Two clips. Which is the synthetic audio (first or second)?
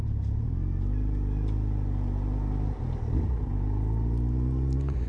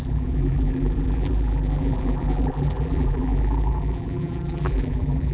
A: second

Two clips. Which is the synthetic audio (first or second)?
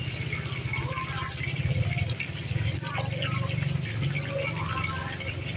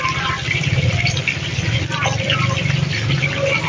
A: second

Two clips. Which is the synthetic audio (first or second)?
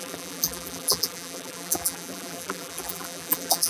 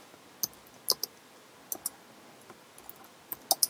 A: first